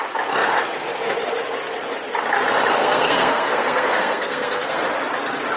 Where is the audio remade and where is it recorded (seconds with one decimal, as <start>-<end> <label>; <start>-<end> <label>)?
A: 0.0-2.8 recorded; 2.8-4.8 remade; 4.8-5.6 recorded